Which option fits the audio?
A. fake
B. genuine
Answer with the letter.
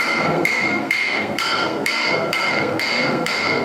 A